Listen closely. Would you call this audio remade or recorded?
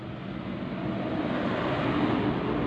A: recorded